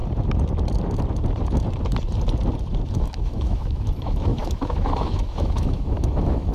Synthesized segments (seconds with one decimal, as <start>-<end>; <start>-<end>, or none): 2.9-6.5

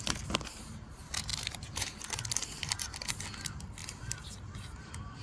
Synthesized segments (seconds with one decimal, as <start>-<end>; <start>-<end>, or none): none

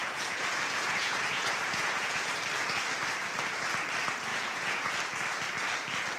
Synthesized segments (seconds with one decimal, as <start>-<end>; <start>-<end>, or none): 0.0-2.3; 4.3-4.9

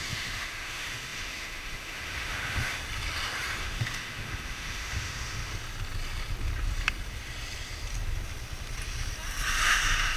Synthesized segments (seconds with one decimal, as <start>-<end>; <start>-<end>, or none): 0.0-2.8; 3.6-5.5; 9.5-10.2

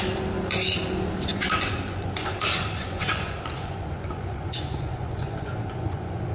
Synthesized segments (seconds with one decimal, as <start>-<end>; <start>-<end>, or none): 1.3-2.3; 2.8-6.3

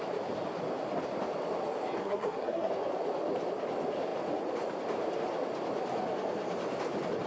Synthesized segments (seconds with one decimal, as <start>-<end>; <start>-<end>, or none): 2.0-2.7